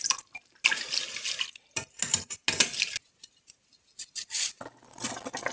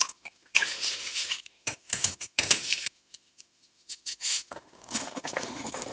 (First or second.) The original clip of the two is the first